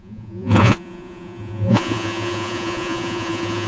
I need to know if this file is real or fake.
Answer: fake